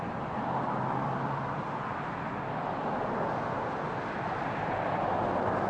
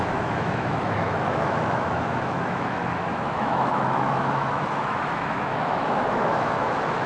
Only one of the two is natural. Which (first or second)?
first